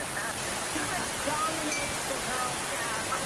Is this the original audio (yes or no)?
yes